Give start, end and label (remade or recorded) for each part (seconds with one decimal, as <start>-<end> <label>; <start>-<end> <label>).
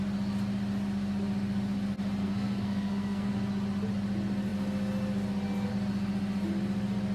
0.0-2.2 recorded; 2.2-3.3 remade; 3.3-7.1 recorded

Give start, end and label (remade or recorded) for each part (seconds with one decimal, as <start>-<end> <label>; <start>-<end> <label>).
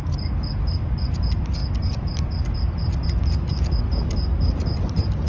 0.0-5.3 recorded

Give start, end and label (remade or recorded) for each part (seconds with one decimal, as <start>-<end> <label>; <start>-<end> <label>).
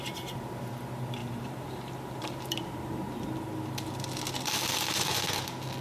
0.0-1.2 recorded; 1.2-3.2 remade; 3.2-5.8 recorded